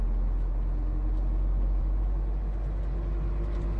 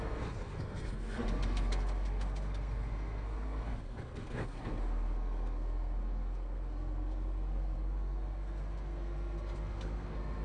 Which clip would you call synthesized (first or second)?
second